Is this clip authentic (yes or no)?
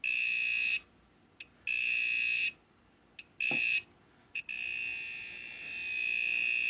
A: yes